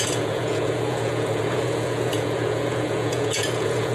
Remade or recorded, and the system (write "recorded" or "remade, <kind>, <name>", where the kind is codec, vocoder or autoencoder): remade, vocoder, Vocos